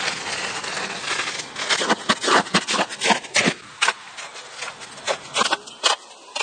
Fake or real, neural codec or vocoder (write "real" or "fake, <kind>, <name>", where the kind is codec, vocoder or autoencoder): real